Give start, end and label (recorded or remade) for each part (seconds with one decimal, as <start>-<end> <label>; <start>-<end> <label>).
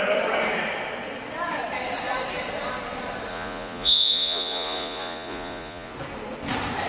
0.0-3.3 recorded; 3.3-5.9 remade; 5.9-6.9 recorded